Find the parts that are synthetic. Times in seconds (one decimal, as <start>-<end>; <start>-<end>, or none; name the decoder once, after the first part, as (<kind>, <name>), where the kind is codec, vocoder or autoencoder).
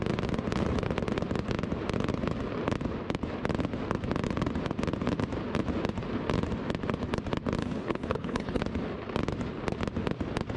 7.6-8.6 (codec, HILCodec)